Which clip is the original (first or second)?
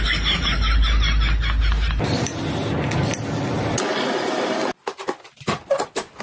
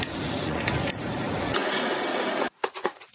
first